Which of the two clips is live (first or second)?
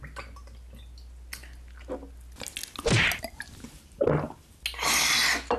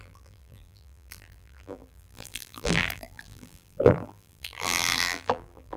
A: first